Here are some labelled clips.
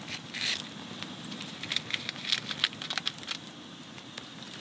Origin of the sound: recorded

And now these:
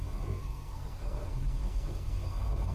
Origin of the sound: remade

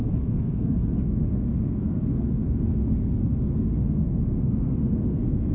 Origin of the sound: remade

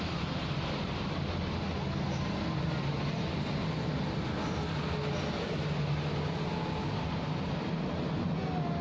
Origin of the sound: recorded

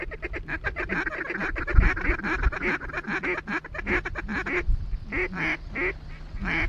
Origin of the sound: recorded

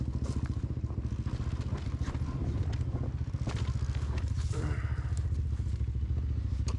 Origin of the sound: recorded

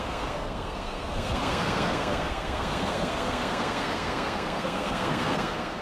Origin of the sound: remade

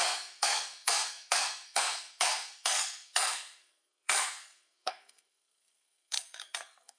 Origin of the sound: remade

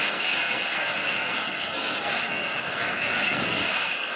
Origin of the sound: remade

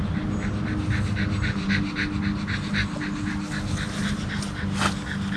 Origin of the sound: recorded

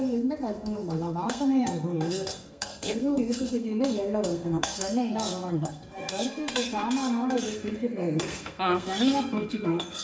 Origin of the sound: remade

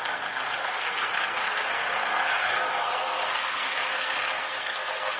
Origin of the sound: remade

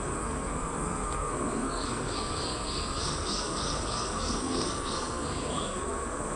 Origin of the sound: remade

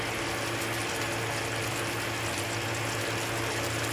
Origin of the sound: recorded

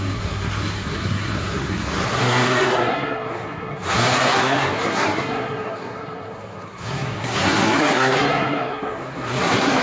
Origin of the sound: remade